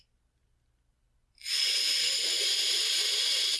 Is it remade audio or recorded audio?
recorded